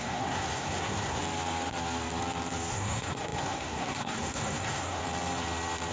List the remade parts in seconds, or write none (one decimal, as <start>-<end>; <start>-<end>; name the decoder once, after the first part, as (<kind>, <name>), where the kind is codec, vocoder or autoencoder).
0.0-1.2 (codec, SNAC); 2.7-5.0